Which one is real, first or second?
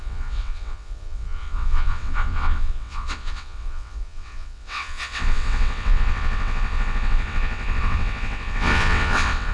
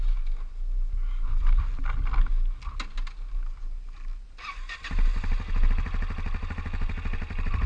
second